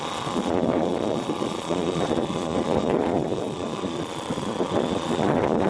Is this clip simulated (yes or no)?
yes